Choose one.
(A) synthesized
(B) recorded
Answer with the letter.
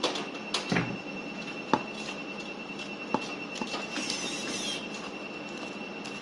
B